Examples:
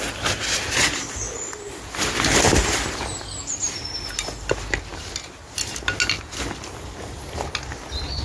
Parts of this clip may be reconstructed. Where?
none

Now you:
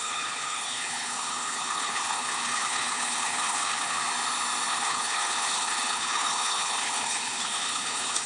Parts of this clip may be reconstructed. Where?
0.0-4.0 (codec, HILCodec); 4.7-8.3